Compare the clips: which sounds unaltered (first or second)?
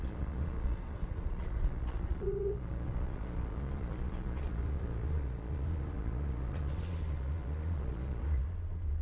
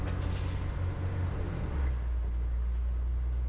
second